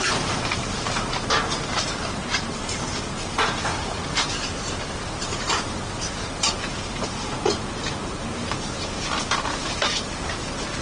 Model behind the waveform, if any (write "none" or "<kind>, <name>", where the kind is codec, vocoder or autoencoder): vocoder, BigVGAN v2